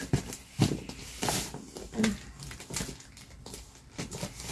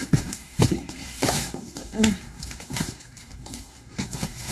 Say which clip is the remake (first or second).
second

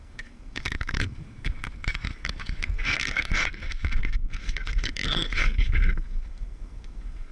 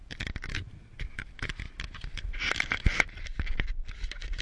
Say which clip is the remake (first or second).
first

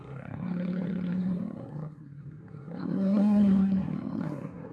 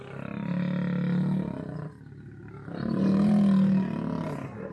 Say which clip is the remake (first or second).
first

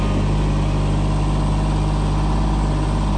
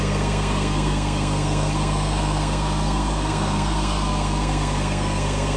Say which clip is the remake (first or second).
second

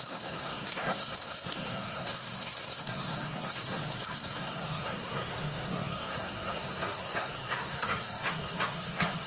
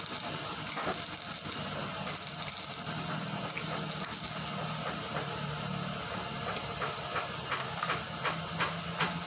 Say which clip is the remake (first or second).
first